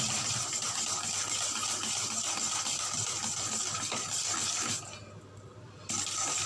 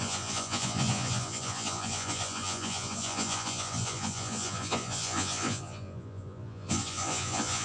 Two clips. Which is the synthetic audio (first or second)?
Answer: second